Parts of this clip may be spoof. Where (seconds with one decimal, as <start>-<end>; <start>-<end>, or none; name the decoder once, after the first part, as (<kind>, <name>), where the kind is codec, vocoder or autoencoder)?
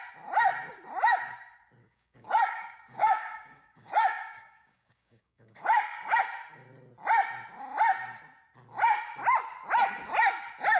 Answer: 1.8-6.2 (codec, DAC)